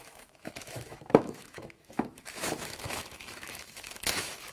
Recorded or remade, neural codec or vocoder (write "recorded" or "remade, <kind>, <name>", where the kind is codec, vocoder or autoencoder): remade, autoencoder, DAC-VAE